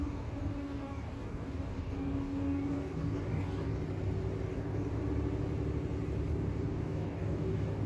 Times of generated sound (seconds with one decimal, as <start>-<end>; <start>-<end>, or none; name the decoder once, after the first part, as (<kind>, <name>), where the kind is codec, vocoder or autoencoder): 0.0-3.8 (codec, DAC); 4.5-5.0; 6.3-7.9